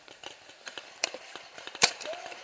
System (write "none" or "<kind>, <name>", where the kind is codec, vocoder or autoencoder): vocoder, BigVGAN v2